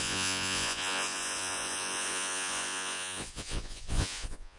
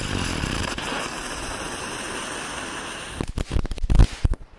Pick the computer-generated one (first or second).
first